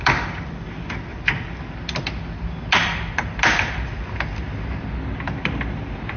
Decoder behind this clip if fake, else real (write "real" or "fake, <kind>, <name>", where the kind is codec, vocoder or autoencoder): real